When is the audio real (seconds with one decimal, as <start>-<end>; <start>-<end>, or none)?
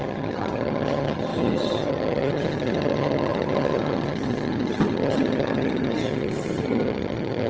none